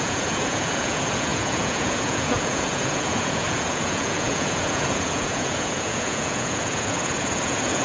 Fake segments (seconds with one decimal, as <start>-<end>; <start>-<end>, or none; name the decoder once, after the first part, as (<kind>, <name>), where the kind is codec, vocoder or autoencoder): 0.0-7.8 (vocoder, Vocos)